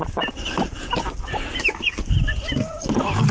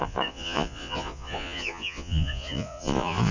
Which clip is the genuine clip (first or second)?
first